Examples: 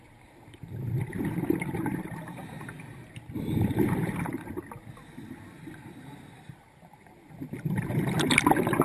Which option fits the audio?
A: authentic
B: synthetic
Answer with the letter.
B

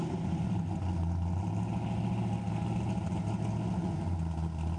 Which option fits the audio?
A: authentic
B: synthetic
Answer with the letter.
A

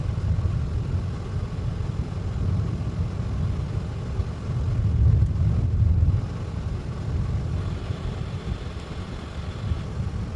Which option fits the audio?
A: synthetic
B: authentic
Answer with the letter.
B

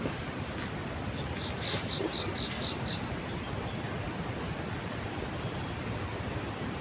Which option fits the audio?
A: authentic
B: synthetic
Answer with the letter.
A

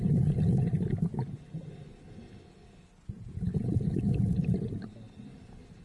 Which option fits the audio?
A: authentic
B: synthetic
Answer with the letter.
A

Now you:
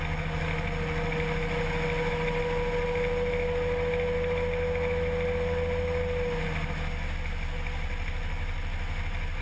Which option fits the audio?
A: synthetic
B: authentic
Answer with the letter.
B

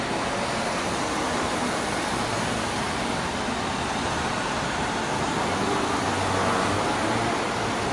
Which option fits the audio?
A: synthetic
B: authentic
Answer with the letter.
B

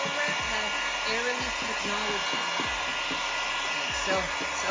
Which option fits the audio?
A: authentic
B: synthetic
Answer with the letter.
A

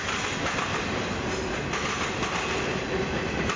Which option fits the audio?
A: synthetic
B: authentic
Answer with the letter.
B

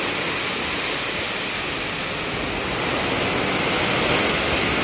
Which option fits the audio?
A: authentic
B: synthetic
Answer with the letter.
A